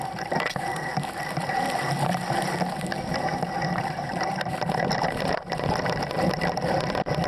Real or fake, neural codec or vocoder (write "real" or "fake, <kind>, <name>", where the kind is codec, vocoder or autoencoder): fake, vocoder, BigVGAN v2